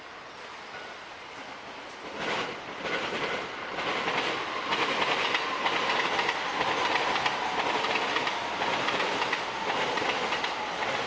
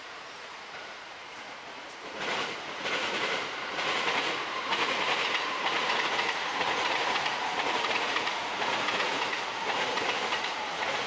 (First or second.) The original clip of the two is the first